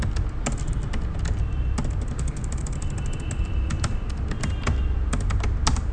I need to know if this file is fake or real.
real